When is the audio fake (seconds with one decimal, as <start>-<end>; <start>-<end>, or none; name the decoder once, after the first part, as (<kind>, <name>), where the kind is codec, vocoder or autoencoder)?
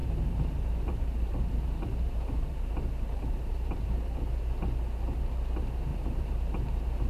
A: 0.0-4.3 (vocoder, BigVGAN v2); 5.9-7.1